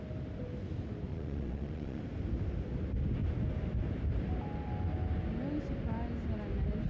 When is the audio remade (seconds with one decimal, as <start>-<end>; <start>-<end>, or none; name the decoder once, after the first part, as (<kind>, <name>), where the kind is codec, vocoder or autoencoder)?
1.1-2.0 (vocoder, Vocos)